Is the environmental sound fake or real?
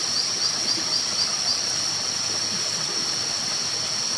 real